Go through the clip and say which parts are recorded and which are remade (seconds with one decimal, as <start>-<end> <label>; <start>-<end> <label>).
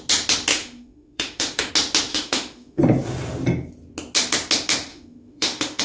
0.0-0.5 recorded; 0.5-1.7 remade; 1.7-2.1 recorded; 2.1-2.8 remade; 2.8-4.9 recorded; 4.9-5.8 remade